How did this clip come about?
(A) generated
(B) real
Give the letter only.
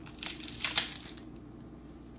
B